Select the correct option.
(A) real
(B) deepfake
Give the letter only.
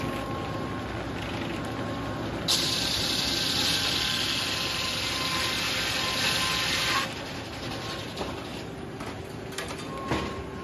A